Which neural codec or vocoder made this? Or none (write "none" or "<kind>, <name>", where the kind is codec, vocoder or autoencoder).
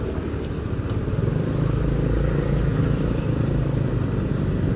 none